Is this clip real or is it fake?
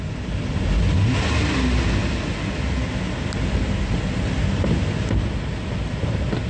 real